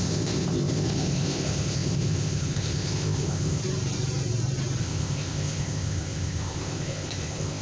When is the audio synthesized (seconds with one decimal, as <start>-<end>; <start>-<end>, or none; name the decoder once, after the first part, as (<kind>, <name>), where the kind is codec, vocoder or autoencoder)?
0.0-3.6 (codec, ZipCodec); 4.8-7.6